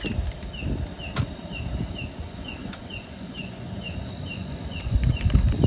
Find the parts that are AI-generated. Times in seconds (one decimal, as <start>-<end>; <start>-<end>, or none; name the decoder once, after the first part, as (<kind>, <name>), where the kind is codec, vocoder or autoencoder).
2.2-5.2 (vocoder, Vocos)